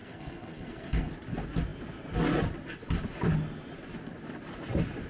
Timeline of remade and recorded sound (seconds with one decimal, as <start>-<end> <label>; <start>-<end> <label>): 0.0-1.1 remade; 1.1-5.1 recorded